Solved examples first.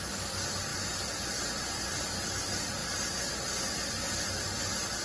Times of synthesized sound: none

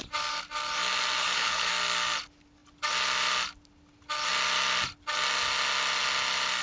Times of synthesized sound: 1.2-1.7